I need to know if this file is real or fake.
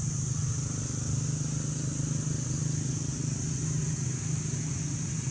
real